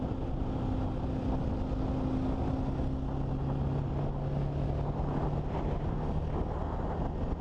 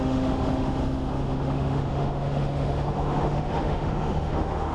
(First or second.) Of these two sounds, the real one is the first